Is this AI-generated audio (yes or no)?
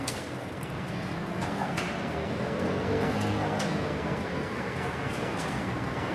yes